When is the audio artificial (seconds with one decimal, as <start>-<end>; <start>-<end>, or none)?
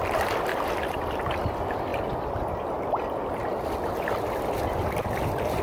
none